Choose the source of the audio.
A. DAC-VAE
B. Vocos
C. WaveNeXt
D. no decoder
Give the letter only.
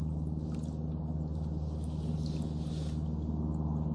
D